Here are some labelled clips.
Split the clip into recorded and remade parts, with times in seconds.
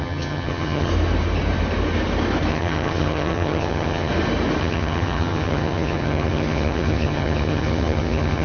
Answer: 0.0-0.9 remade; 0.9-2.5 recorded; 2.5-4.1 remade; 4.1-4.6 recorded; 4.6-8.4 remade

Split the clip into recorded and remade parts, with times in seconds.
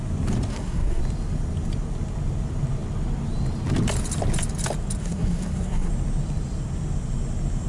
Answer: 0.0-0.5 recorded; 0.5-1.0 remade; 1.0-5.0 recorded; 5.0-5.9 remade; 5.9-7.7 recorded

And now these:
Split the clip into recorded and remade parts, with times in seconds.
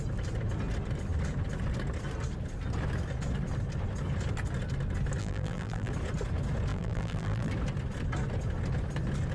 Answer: 0.0-5.2 recorded; 5.2-5.9 remade; 5.9-6.7 recorded; 6.7-7.5 remade; 7.5-9.3 recorded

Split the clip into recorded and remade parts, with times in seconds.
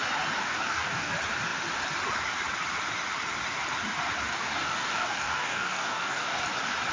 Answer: 0.0-0.4 recorded; 0.4-1.1 remade; 1.1-4.3 recorded; 4.3-6.4 remade; 6.4-6.9 recorded